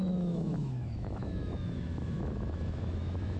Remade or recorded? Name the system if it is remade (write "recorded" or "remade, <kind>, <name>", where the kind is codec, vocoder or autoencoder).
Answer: remade, autoencoder, DAC-VAE